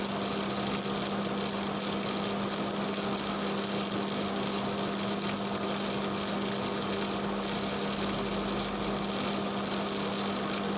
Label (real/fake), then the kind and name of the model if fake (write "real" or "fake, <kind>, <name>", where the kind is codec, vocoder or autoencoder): real